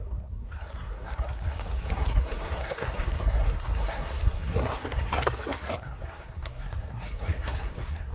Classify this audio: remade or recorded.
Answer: remade